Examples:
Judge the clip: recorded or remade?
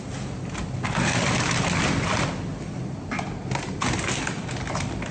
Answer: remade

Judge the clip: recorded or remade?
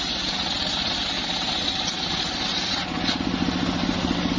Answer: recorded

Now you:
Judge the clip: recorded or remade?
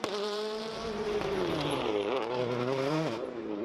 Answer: remade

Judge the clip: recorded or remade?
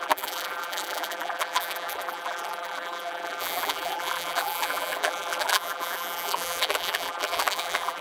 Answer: remade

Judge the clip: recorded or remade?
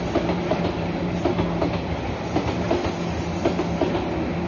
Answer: recorded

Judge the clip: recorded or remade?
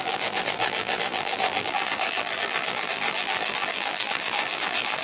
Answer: remade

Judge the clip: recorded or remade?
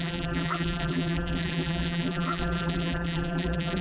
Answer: remade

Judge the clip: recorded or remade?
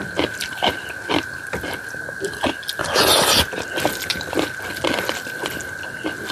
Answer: recorded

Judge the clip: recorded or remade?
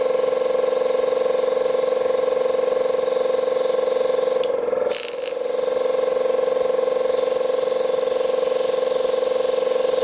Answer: recorded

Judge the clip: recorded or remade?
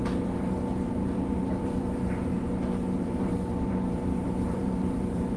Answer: remade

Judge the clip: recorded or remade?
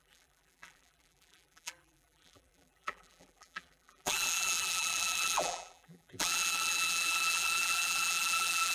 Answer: remade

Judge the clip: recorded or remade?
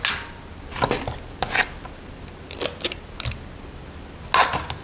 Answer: recorded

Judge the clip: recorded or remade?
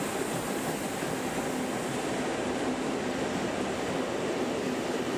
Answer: recorded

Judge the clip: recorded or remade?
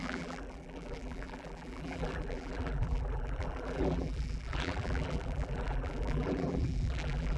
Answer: remade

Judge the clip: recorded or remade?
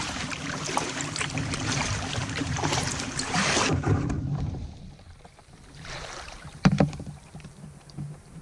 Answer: remade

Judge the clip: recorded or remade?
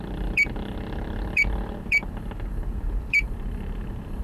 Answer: remade